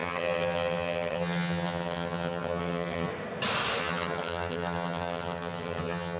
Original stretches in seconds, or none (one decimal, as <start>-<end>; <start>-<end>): 3.1-3.8